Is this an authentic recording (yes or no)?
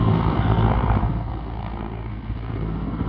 no